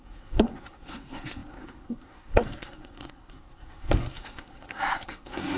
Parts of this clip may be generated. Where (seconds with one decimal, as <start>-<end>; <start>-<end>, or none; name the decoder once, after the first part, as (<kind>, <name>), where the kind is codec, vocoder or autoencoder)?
0.0-5.6 (codec, SNAC)